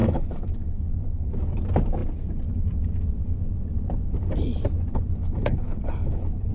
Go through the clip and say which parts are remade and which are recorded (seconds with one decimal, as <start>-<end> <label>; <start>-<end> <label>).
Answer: 0.0-1.3 remade; 1.3-4.9 recorded; 4.9-6.5 remade